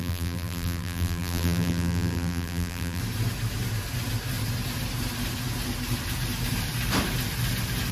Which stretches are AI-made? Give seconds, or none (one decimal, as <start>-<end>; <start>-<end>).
0.0-3.0